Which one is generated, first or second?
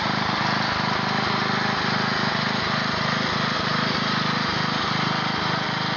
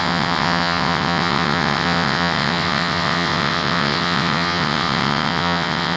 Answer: second